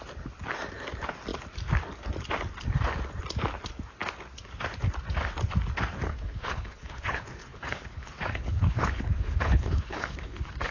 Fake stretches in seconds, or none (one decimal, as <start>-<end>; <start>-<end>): 6.1-10.7